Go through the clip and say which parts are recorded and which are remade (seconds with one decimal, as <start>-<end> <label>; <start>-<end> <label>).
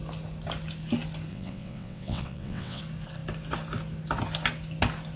0.0-1.3 recorded; 1.3-2.8 remade; 2.8-5.2 recorded